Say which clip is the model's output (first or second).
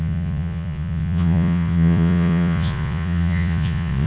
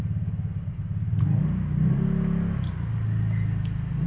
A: first